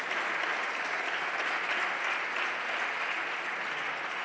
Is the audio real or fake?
real